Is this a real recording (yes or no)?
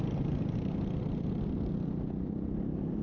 no